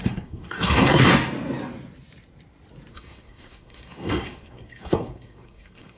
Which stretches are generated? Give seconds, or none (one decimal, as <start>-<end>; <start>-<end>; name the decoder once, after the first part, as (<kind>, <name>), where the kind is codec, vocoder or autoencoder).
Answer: 0.0-1.1 (codec, SNAC); 2.9-6.0